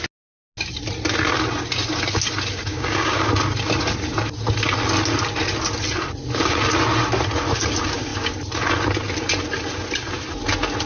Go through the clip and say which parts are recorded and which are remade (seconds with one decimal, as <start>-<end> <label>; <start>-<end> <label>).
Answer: 0.0-2.7 recorded; 2.7-3.3 remade; 3.3-10.9 recorded